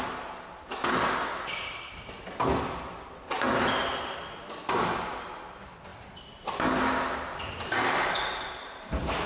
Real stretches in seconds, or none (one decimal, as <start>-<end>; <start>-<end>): 0.0-9.3